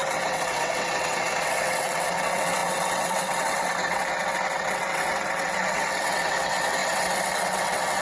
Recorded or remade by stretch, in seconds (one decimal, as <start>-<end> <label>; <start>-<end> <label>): 0.0-8.0 remade